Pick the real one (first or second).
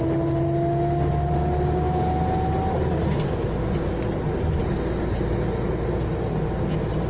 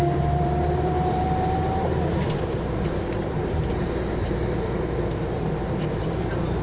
first